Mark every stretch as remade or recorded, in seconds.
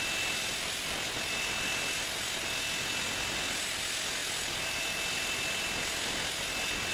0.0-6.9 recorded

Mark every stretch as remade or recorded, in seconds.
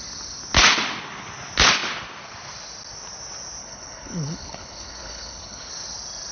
0.0-3.6 recorded; 3.6-5.7 remade; 5.7-6.3 recorded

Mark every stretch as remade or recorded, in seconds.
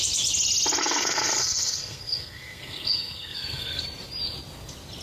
0.0-0.8 recorded; 0.8-3.8 remade; 3.8-5.0 recorded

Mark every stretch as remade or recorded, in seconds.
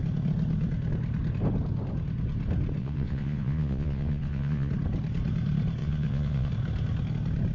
0.0-2.8 recorded; 2.8-4.7 remade; 4.7-5.8 recorded; 5.8-6.5 remade; 6.5-7.5 recorded